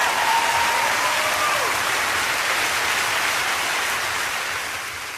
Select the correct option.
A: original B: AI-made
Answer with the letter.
A